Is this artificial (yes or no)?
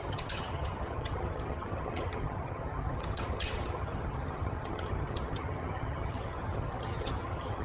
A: yes